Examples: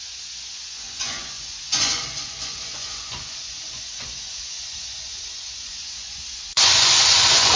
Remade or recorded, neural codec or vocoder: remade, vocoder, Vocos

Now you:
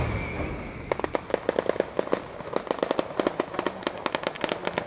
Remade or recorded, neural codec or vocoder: recorded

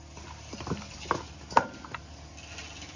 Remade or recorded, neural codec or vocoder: recorded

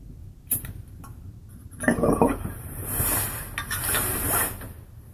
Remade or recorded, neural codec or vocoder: recorded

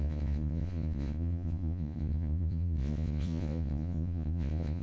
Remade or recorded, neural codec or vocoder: remade, vocoder, Vocos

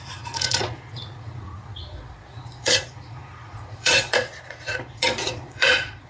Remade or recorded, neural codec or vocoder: remade, vocoder, Vocos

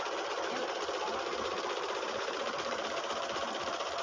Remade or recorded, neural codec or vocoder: remade, vocoder, BigVGAN v2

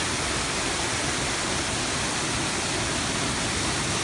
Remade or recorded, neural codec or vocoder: recorded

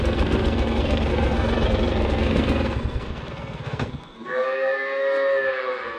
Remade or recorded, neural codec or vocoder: remade, codec, SNAC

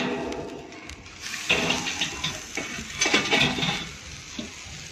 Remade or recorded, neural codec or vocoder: recorded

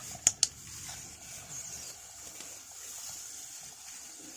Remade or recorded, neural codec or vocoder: recorded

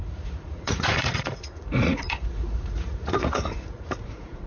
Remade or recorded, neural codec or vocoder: remade, vocoder, Vocos